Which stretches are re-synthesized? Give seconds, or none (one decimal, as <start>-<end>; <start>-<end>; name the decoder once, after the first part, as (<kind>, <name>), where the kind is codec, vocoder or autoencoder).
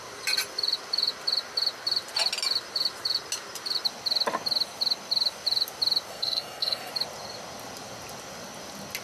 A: 6.1-6.9 (codec, SNAC)